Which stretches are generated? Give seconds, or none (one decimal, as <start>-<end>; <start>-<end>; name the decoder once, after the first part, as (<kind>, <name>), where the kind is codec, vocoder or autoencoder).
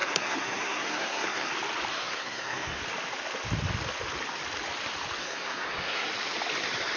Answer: 0.0-1.5 (codec, SNAC); 1.9-2.8; 5.2-6.1